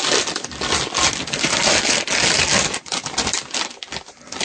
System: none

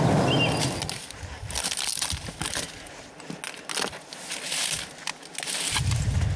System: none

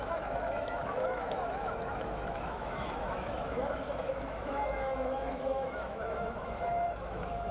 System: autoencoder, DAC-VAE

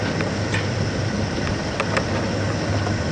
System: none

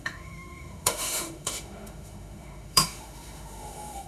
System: autoencoder, DAC-VAE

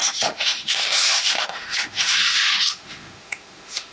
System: autoencoder, DAC-VAE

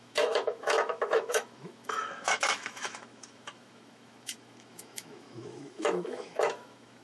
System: autoencoder, DAC-VAE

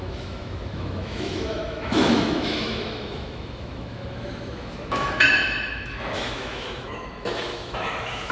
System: autoencoder, DAC-VAE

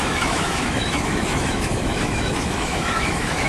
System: autoencoder, DAC-VAE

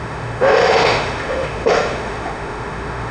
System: autoencoder, DAC-VAE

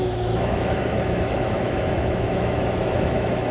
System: autoencoder, DAC-VAE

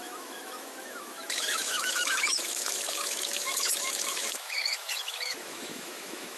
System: autoencoder, DAC-VAE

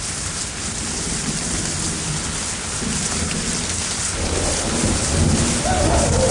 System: none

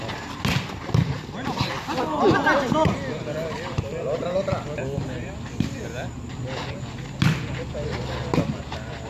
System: none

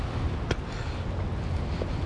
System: none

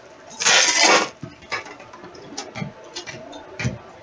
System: none